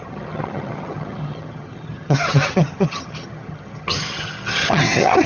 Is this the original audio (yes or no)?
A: no